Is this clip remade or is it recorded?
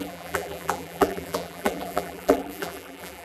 remade